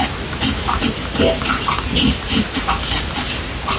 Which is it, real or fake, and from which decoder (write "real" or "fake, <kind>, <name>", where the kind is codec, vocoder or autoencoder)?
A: real